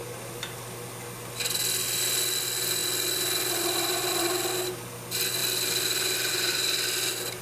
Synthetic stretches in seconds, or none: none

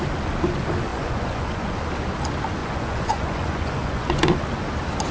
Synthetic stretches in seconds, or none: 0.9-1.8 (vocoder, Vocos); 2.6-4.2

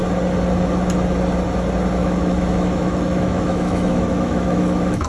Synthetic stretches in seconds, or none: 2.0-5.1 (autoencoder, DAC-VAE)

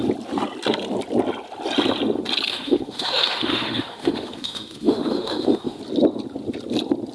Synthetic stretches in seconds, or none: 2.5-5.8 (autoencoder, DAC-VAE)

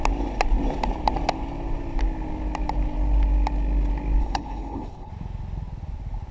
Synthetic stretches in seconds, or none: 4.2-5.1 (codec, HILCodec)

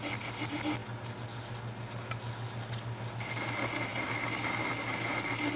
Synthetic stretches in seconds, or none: 0.8-1.6 (vocoder, BigVGAN v2); 3.9-4.7

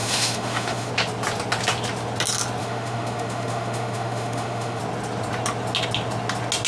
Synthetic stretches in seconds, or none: 0.0-0.9 (autoencoder, DAC-VAE); 2.6-4.8